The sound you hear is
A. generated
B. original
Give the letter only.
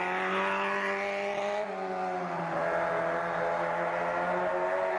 B